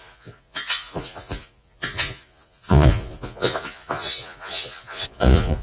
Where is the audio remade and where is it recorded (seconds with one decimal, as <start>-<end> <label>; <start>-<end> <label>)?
0.0-5.6 remade